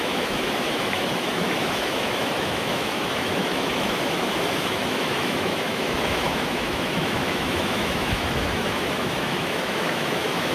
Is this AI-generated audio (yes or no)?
yes